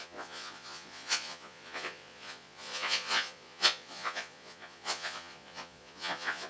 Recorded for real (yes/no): no